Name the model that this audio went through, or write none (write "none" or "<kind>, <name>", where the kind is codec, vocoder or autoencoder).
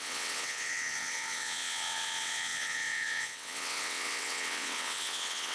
vocoder, WaveNeXt